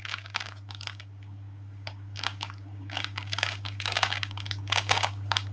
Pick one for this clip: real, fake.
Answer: fake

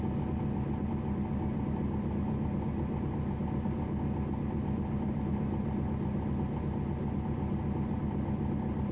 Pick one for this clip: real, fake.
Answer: real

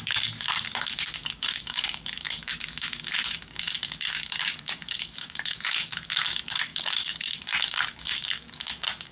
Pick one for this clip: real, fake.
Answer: fake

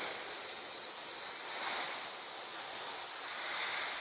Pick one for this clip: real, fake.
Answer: real